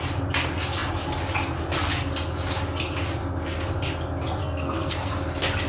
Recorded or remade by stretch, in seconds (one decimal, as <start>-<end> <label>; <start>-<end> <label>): 0.0-4.4 recorded; 4.4-5.1 remade; 5.1-5.7 recorded